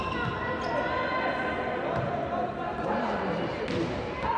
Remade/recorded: recorded